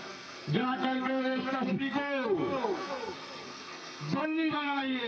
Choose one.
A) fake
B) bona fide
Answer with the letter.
A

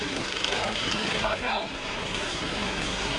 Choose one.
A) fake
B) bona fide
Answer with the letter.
A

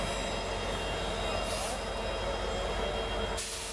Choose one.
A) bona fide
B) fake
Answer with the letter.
A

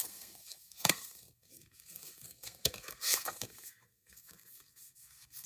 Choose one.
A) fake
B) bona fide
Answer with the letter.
A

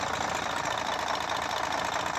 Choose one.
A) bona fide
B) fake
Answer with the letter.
A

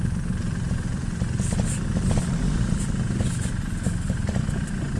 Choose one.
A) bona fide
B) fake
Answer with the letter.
A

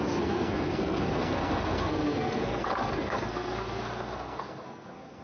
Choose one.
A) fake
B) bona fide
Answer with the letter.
A